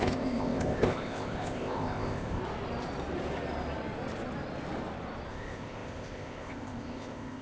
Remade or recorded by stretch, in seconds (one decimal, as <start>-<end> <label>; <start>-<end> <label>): 0.0-2.4 remade; 2.4-5.3 recorded; 5.3-7.4 remade